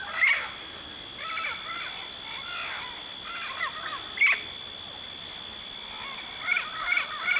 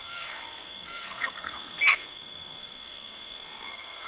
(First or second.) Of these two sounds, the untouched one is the first